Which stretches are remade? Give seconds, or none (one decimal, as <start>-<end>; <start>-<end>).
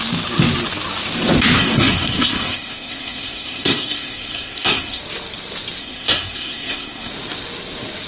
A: 1.6-5.0; 5.8-7.1